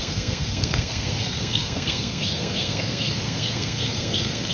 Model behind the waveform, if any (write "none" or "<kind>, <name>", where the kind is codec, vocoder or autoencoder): codec, SNAC